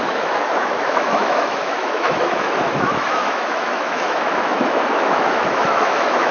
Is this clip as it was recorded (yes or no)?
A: no